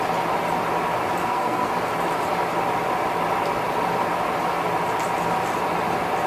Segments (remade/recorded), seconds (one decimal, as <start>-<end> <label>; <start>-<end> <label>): 0.0-1.2 recorded; 1.2-1.7 remade; 1.7-6.3 recorded